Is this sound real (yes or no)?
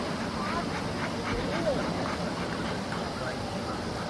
yes